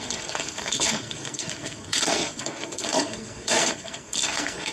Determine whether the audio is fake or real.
fake